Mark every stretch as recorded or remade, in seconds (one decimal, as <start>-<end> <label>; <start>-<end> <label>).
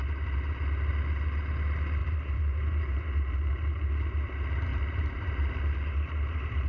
0.0-0.9 remade; 0.9-2.0 recorded; 2.0-3.9 remade; 3.9-4.7 recorded; 4.7-5.6 remade; 5.6-6.7 recorded